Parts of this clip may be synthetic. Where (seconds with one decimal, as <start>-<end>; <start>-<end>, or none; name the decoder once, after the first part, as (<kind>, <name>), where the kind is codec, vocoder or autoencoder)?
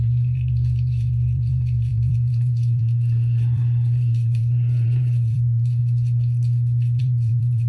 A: 0.0-5.8 (vocoder, BigVGAN v2); 7.0-7.7